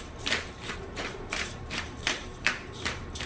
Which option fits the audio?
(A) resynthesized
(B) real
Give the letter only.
A